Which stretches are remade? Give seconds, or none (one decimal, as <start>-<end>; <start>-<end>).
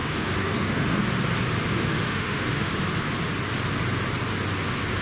0.0-1.0; 1.7-2.7